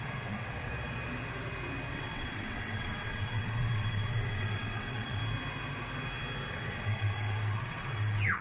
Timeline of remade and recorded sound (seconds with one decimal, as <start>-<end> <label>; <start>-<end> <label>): 0.0-0.7 remade; 0.7-1.9 recorded; 1.9-5.2 remade; 5.2-6.5 recorded; 6.5-8.4 remade